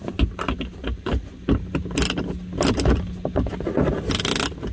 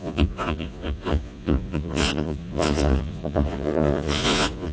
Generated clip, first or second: second